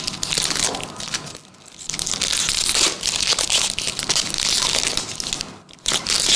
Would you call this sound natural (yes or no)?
yes